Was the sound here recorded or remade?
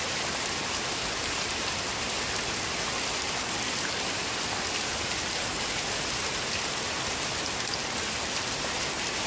recorded